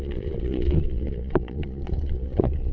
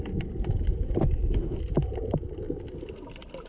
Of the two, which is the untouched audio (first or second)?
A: second